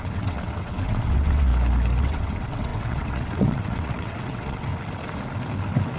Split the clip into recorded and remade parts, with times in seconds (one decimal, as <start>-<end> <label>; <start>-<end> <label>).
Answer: 0.0-1.5 remade; 1.5-2.0 recorded; 2.0-4.7 remade; 4.7-6.0 recorded